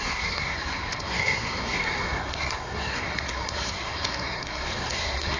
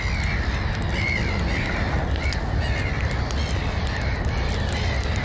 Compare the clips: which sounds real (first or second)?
second